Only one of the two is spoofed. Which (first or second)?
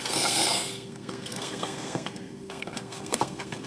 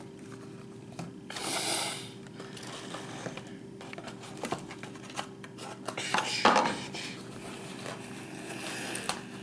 first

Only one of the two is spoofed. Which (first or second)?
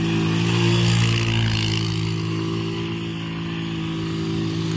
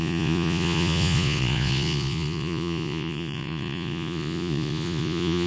second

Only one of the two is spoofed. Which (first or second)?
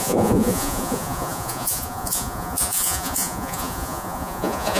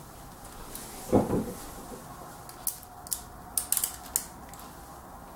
first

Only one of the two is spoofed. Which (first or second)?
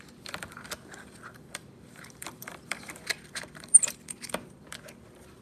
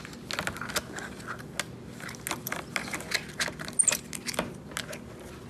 first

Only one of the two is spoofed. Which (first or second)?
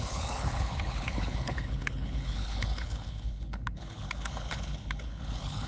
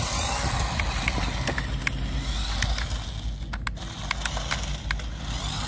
first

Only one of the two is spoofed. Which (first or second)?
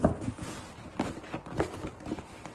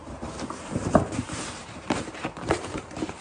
second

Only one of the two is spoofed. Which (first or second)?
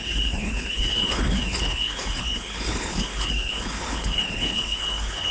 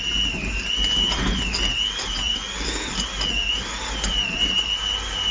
first